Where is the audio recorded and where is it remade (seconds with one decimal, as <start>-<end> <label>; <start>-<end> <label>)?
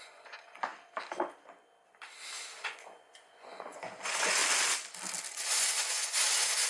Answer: 0.0-0.7 remade; 0.7-2.6 recorded; 2.6-4.4 remade; 4.4-5.3 recorded; 5.3-6.7 remade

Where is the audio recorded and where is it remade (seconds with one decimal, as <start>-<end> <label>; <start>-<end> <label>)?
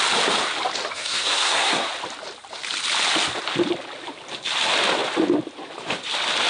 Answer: 0.0-0.9 recorded; 0.9-1.9 remade; 1.9-6.5 recorded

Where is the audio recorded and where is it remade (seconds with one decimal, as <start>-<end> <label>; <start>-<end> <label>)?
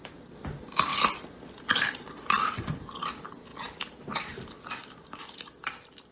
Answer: 0.0-0.9 remade; 0.9-1.9 recorded; 1.9-3.5 remade; 3.5-5.1 recorded; 5.1-6.1 remade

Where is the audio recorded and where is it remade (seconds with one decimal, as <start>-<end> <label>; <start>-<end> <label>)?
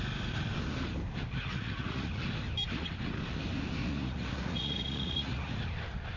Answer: 0.0-1.5 recorded; 1.5-2.1 remade; 2.1-3.8 recorded; 3.8-5.5 remade; 5.5-6.2 recorded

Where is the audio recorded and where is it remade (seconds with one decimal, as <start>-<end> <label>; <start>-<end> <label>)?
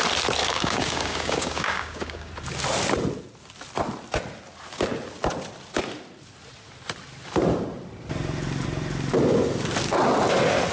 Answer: 0.0-0.4 recorded; 0.4-2.3 remade; 2.3-10.7 recorded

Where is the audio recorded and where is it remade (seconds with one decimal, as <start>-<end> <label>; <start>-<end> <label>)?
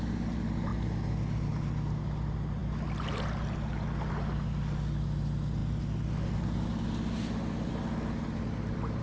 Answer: 0.0-9.0 recorded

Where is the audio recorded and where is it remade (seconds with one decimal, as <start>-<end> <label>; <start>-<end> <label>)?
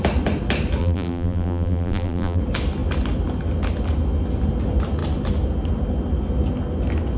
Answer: 0.0-0.8 recorded; 0.8-2.4 remade; 2.4-7.2 recorded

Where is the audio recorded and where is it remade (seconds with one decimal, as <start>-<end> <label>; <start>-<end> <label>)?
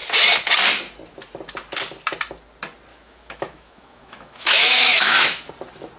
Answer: 0.0-2.9 recorded; 2.9-5.5 remade; 5.5-6.0 recorded